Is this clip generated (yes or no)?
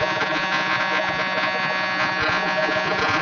yes